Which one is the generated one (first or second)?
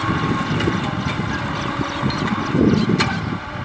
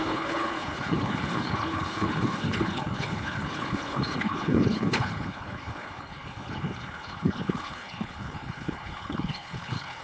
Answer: second